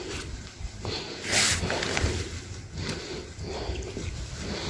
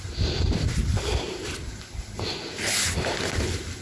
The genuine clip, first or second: second